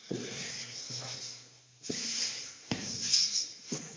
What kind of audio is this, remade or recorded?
remade